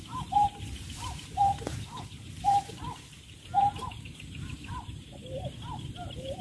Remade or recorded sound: remade